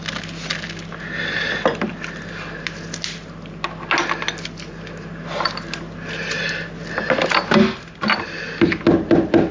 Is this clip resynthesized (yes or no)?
no